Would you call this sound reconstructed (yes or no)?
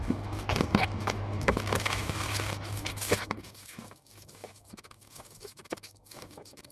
yes